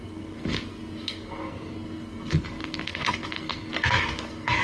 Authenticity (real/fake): fake